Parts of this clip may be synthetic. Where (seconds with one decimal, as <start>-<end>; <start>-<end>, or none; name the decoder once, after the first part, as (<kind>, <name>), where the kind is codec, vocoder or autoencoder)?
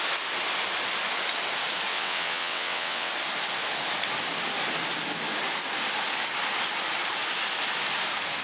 1.9-3.1 (vocoder, WaveNeXt)